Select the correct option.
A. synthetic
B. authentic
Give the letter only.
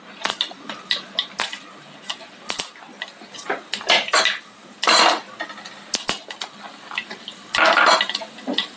B